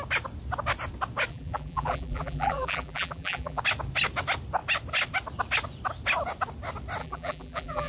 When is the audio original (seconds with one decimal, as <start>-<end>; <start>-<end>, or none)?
0.0-1.3; 3.6-7.0